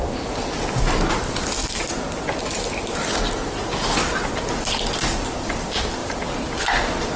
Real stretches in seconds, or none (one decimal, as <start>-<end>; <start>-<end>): 0.0-6.0; 6.6-7.2